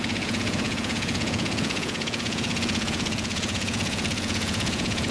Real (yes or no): no